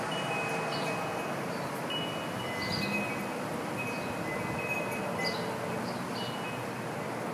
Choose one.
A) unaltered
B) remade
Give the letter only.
A